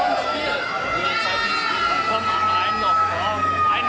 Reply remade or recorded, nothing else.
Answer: recorded